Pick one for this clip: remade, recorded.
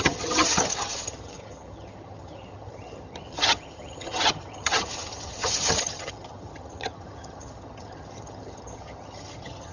remade